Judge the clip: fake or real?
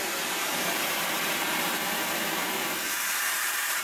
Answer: fake